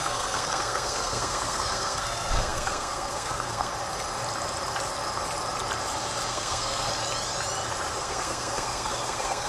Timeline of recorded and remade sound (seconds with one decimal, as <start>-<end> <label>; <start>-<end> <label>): 0.0-3.7 remade; 3.7-6.3 recorded; 6.3-6.9 remade; 6.9-8.0 recorded; 8.0-9.5 remade